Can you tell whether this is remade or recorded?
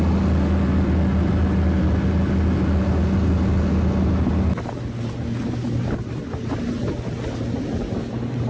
recorded